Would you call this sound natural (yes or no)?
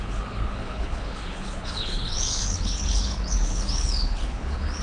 no